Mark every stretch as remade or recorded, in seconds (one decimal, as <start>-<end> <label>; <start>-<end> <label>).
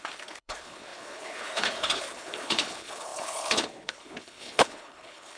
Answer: 0.0-5.4 remade